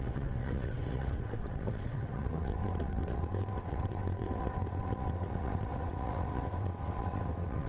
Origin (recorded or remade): remade